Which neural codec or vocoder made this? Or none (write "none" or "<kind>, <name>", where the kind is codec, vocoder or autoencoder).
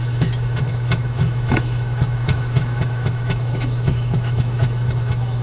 autoencoder, DAC-VAE